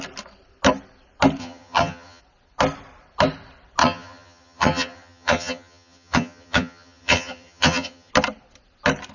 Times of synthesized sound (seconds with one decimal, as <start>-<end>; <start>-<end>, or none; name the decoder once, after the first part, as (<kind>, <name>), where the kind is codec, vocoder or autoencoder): 1.4-2.2 (vocoder, HiFi-GAN); 3.8-8.1